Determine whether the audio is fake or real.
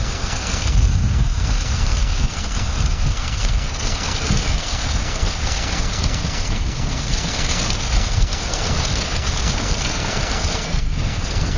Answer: fake